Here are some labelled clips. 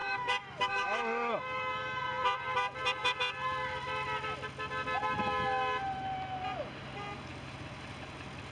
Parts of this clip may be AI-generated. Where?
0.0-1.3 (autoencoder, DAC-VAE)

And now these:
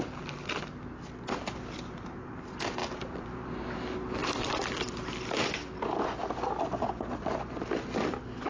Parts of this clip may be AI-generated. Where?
2.8-3.5 (vocoder, BigVGAN v2)

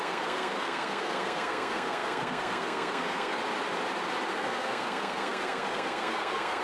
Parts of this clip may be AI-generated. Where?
0.0-3.4 (codec, SNAC); 4.3-6.6

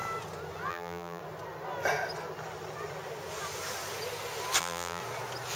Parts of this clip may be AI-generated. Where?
0.7-1.2 (vocoder, BigVGAN v2); 4.6-5.0

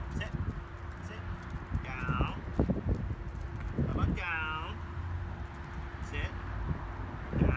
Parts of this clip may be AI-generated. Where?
none

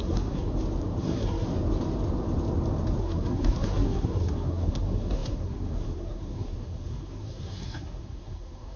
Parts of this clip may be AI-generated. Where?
0.0-0.5 (codec, SNAC); 1.0-1.5; 3.0-8.8